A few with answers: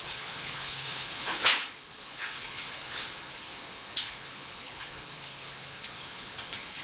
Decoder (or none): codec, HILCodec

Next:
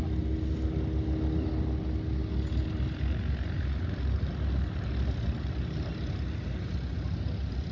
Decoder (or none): none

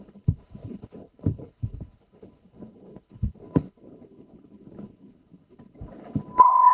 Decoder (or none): codec, HILCodec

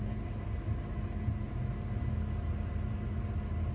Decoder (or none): none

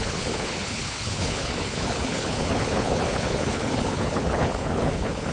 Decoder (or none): codec, HILCodec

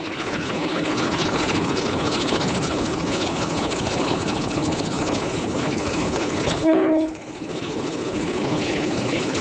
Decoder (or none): codec, HILCodec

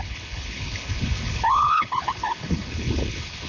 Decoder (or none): codec, HILCodec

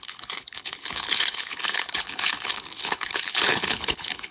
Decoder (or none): codec, HILCodec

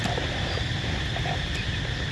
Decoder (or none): none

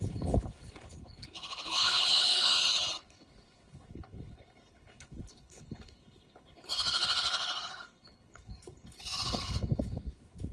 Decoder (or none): codec, HILCodec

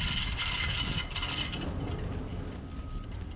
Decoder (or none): none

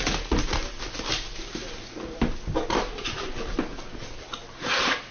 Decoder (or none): none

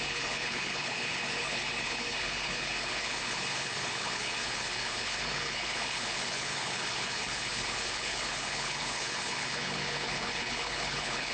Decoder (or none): codec, HILCodec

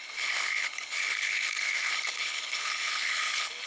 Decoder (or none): codec, HILCodec